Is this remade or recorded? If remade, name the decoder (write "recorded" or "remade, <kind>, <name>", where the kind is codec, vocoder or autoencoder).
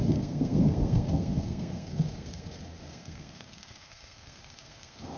remade, codec, SNAC